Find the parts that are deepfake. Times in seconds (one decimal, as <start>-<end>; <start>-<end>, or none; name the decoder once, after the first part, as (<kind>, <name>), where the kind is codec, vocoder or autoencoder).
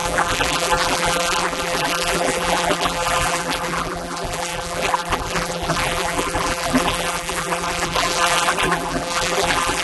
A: 0.0-9.8 (vocoder, BigVGAN v2)